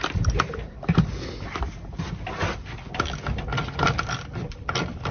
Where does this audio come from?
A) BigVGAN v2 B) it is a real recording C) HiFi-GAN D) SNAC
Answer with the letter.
B